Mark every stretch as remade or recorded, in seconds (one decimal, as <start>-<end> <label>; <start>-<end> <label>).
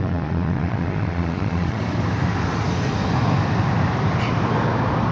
0.0-1.8 remade; 1.8-5.1 recorded